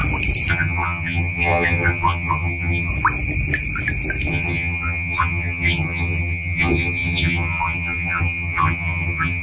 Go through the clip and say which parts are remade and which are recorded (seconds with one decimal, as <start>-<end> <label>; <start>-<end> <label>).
0.0-0.5 recorded; 0.5-2.9 remade; 2.9-4.3 recorded; 4.3-9.4 remade

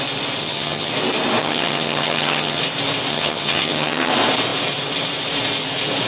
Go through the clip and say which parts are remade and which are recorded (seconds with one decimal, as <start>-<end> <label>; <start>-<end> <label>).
0.0-0.4 recorded; 0.4-0.9 remade; 0.9-1.4 recorded; 1.4-2.6 remade; 2.6-3.1 recorded; 3.1-4.1 remade; 4.1-6.1 recorded

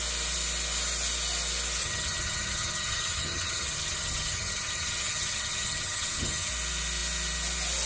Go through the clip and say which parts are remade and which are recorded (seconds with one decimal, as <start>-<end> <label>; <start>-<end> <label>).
0.0-1.8 recorded; 1.8-6.5 remade; 6.5-7.9 recorded

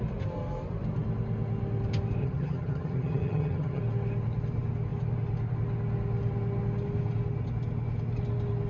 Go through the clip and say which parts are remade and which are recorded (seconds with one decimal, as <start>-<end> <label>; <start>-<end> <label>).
0.0-2.2 recorded; 2.2-3.8 remade; 3.8-8.7 recorded

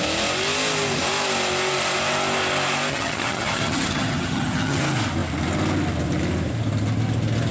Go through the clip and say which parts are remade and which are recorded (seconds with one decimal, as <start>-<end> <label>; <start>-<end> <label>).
0.0-2.9 recorded; 2.9-4.8 remade; 4.8-7.5 recorded

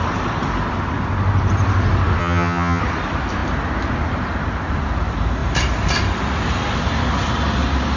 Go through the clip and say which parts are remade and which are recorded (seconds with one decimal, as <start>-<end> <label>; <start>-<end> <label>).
0.0-2.2 recorded; 2.2-2.8 remade; 2.8-8.0 recorded

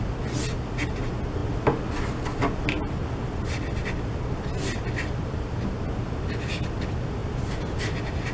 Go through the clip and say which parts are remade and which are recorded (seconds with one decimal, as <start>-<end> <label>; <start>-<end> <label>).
0.0-8.3 recorded